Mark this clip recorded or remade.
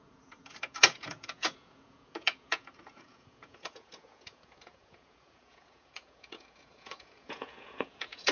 remade